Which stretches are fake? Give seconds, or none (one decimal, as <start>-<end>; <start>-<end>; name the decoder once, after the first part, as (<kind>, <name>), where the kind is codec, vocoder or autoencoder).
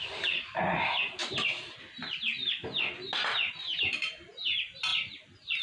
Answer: none